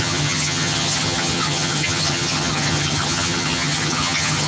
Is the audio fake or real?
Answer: fake